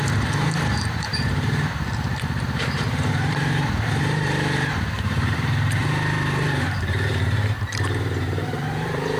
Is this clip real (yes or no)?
no